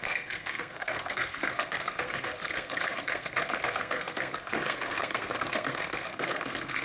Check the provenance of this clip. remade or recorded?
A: remade